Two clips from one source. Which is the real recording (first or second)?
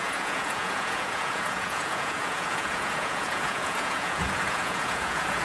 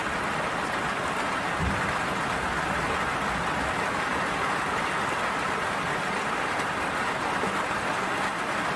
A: second